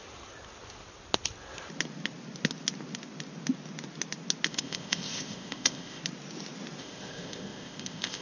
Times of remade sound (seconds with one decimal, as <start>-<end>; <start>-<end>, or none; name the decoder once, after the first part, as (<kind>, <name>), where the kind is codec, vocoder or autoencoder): 4.5-6.0 (codec, ZipCodec); 6.8-8.2